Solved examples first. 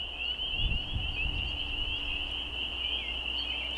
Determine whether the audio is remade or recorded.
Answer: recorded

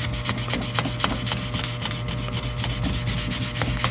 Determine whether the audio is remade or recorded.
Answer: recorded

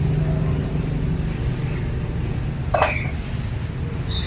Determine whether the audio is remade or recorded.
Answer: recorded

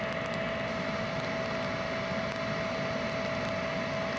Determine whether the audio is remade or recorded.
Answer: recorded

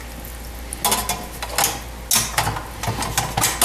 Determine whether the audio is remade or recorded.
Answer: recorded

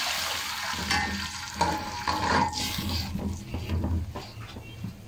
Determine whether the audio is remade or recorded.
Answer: recorded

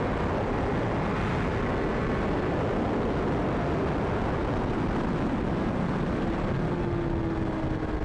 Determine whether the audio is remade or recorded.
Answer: recorded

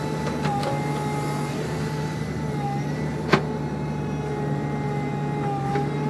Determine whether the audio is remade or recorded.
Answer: recorded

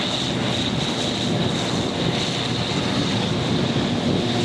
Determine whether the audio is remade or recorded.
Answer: recorded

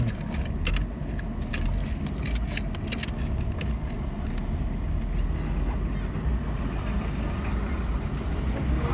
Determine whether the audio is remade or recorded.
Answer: recorded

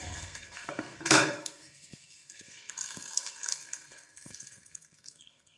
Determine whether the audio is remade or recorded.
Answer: remade